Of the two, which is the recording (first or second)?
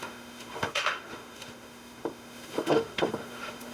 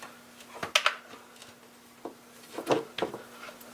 second